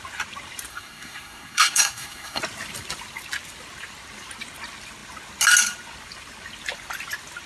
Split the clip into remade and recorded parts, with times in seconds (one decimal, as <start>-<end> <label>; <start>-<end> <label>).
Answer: 0.0-0.7 recorded; 0.7-2.4 remade; 2.4-7.5 recorded